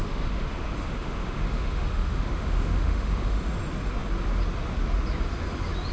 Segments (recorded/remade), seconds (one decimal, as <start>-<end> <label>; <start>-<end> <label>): 0.0-3.5 remade; 3.5-5.9 recorded